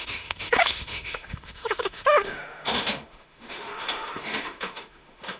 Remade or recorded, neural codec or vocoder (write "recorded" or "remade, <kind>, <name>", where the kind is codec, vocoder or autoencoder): remade, autoencoder, DAC-VAE